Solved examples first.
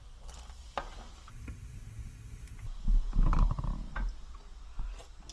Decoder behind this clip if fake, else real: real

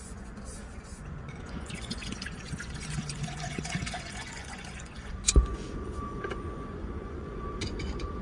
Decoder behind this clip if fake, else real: fake, vocoder, Vocos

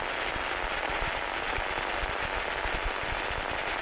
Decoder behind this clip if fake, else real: real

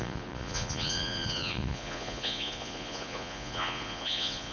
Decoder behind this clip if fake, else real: fake, vocoder, Vocos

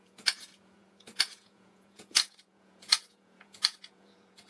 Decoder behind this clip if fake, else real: fake, vocoder, Vocos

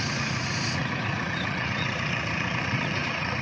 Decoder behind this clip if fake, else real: fake, vocoder, Vocos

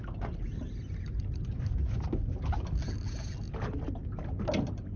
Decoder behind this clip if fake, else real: real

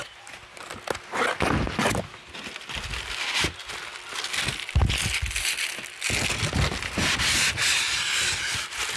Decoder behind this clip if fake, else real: real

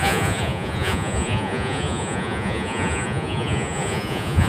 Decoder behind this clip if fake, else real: fake, vocoder, Vocos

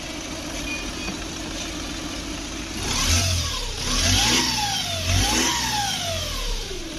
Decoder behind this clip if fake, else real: real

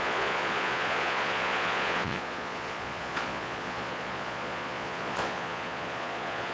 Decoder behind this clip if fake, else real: fake, vocoder, Vocos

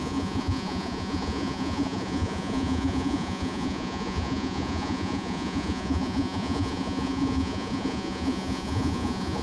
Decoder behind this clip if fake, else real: fake, vocoder, Vocos